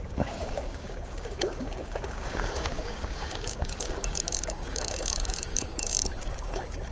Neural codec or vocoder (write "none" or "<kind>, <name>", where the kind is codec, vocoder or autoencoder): codec, DAC